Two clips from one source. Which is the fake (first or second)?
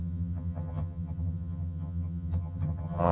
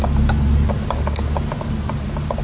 first